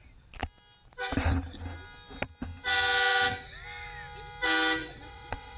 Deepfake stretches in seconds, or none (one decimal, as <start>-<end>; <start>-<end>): 4.8-5.6

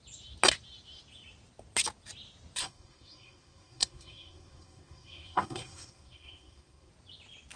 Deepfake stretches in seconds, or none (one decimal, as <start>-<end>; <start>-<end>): 2.6-6.9